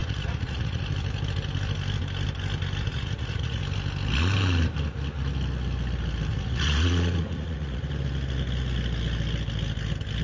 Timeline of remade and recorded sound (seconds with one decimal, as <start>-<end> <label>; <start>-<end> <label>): 0.0-0.8 remade; 0.8-2.9 recorded; 2.9-3.6 remade; 3.6-6.3 recorded; 6.3-7.9 remade; 7.9-10.2 recorded